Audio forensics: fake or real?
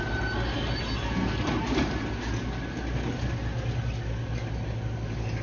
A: real